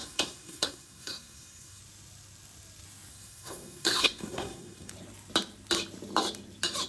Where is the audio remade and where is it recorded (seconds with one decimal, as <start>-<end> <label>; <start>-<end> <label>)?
0.0-1.8 remade; 1.8-3.1 recorded; 3.1-4.9 remade; 4.9-6.9 recorded

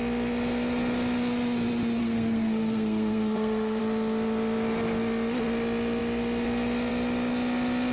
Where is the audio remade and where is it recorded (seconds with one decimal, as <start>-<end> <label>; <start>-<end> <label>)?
0.0-2.0 recorded; 2.0-3.8 remade; 3.8-7.9 recorded

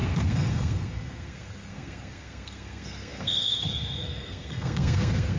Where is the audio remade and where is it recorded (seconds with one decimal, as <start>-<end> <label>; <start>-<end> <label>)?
0.0-5.4 remade

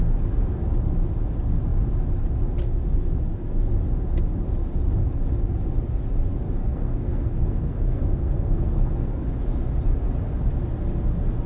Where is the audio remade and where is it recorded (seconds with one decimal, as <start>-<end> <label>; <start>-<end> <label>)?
0.0-6.6 recorded; 6.6-9.3 remade; 9.3-11.5 recorded

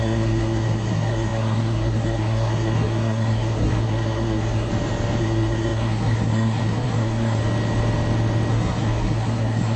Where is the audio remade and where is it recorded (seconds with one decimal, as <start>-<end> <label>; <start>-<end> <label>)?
0.0-4.7 remade; 4.7-5.2 recorded; 5.2-7.4 remade; 7.4-8.5 recorded; 8.5-9.8 remade

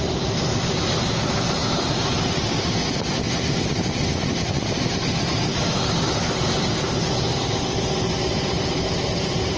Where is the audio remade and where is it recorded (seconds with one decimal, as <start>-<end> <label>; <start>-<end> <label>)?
0.0-9.6 recorded